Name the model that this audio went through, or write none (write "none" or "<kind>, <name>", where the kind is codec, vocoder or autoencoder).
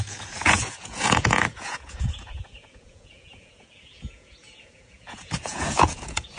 vocoder, Vocos